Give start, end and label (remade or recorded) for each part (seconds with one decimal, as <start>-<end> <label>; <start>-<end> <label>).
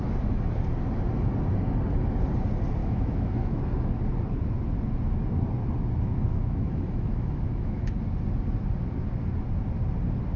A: 0.0-2.8 recorded; 2.8-3.6 remade; 3.6-6.3 recorded; 6.3-8.0 remade; 8.0-10.4 recorded